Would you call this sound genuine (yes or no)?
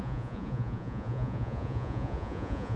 no